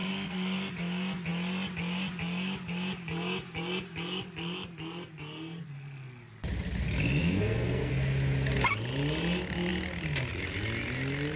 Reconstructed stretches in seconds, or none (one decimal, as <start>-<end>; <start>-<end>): 0.0-0.7; 7.2-7.9